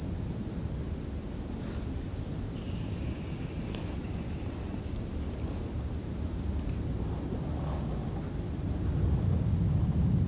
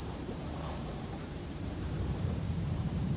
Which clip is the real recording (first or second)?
first